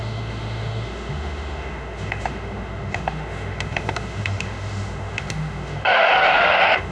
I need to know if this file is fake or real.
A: fake